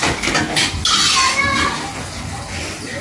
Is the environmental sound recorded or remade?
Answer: recorded